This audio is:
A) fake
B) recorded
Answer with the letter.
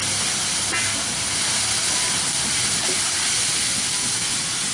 B